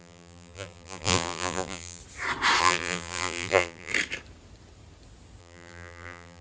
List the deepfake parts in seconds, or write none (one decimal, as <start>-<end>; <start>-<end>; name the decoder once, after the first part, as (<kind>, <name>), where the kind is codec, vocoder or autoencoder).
0.0-2.0 (vocoder, BigVGAN v2); 2.6-3.9; 5.4-6.4